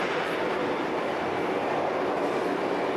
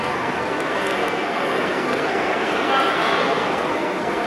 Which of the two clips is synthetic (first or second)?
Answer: second